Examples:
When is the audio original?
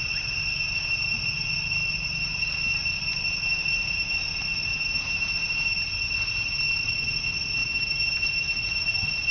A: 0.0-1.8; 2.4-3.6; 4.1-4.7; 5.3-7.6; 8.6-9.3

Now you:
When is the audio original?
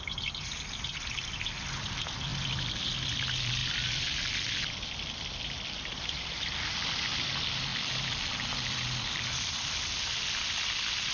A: 0.0-11.1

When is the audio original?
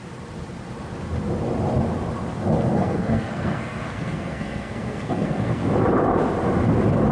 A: 0.0-2.7; 5.7-7.1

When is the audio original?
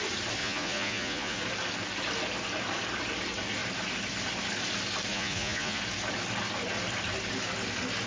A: 0.0-0.4; 1.4-5.1; 5.8-8.1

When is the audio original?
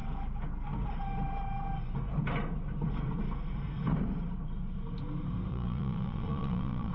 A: 0.0-5.5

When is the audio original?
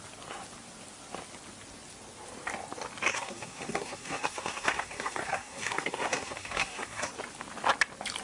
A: 0.0-3.1; 7.1-8.2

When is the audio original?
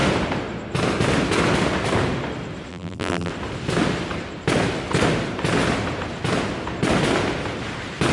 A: 0.0-2.7; 3.3-8.1